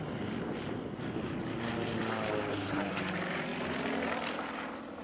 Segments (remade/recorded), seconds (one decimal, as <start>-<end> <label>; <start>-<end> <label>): 0.0-2.5 recorded; 2.5-3.0 remade; 3.0-5.0 recorded